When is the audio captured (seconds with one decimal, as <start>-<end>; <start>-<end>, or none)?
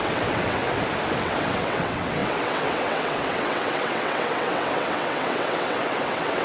0.6-1.2